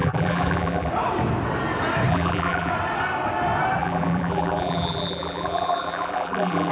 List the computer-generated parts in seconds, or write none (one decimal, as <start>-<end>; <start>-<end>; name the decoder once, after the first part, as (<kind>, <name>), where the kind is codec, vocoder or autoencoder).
0.0-0.9 (vocoder, BigVGAN v2); 2.1-2.7; 3.8-6.7